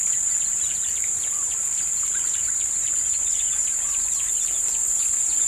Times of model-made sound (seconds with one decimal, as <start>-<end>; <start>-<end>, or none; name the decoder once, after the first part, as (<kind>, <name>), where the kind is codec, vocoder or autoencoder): 0.0-5.5 (vocoder, BigVGAN v2)